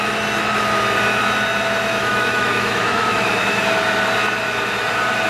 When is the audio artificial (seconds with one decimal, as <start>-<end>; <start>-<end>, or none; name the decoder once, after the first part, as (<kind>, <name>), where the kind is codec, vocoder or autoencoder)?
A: 2.0-3.6 (autoencoder, DAC-VAE)